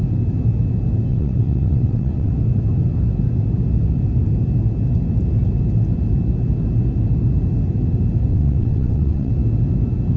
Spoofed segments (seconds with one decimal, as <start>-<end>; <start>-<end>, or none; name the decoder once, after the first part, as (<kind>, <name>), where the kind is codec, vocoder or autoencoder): 1.1-2.3 (vocoder, WaveNeXt); 8.3-9.3